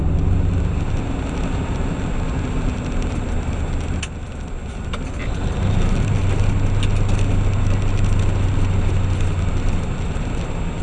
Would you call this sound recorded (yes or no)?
yes